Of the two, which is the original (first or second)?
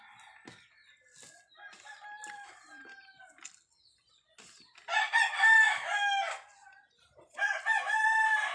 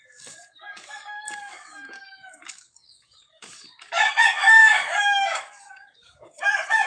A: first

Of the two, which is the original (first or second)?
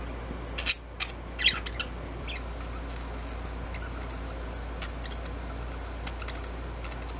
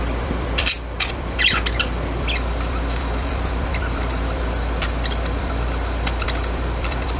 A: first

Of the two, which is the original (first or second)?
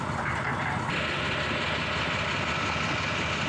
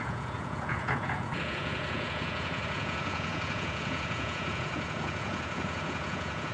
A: first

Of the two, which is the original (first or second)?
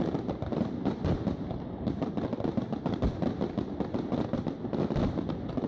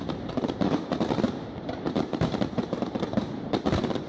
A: first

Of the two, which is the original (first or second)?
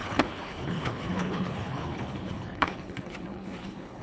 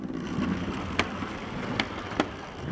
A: second